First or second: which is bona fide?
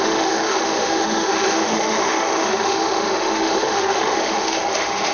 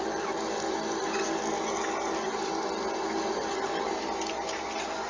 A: second